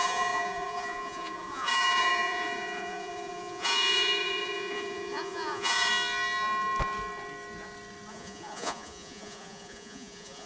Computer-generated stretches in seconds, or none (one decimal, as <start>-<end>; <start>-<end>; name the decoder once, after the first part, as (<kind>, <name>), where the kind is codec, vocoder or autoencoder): 0.0-5.9 (vocoder, Vocos); 8.1-10.5